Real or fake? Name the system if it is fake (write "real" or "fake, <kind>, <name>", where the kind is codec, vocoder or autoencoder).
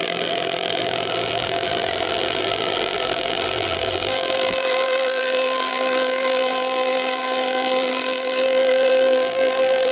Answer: fake, vocoder, BigVGAN v2